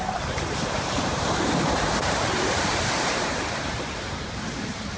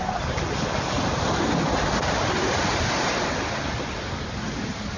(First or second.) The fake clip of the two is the first